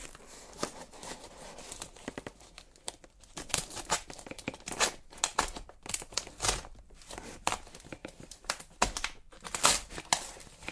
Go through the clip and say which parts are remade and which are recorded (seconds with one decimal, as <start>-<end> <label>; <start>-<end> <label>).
0.0-8.0 recorded; 8.0-8.6 remade; 8.6-10.7 recorded